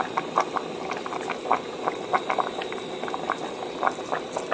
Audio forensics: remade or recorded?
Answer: recorded